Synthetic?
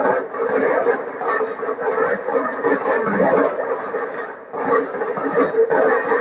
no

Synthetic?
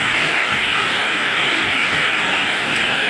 yes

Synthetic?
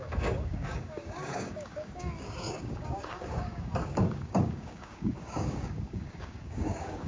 yes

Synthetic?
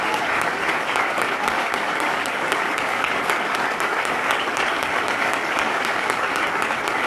yes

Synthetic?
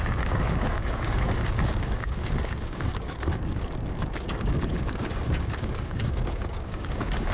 yes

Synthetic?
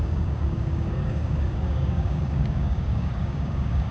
yes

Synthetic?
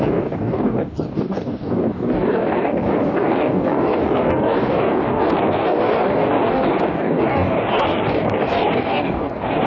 yes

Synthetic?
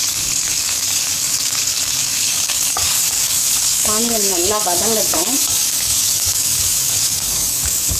yes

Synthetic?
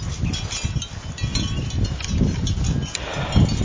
no